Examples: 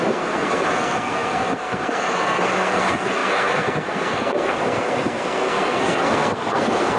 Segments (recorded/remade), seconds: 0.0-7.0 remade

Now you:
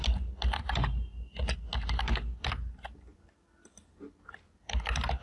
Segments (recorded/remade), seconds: 0.0-5.2 recorded

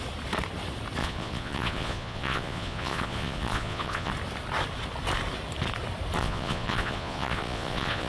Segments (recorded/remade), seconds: 0.0-1.0 recorded; 1.0-4.1 remade; 4.1-6.2 recorded; 6.2-8.1 remade